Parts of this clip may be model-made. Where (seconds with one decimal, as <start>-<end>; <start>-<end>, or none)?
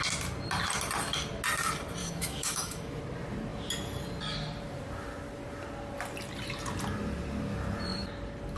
2.0-3.0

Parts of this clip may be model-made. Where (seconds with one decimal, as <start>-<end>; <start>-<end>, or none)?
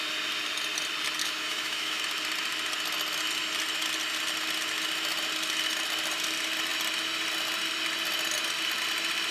1.2-2.0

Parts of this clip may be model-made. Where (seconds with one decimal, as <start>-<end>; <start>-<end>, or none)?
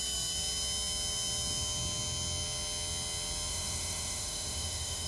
3.5-5.1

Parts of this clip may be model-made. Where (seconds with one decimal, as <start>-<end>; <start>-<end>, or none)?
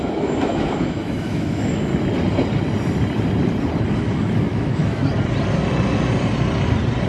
0.0-1.9; 4.0-5.0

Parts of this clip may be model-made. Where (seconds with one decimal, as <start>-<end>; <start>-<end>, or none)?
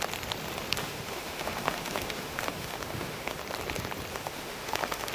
0.8-3.4; 4.1-5.1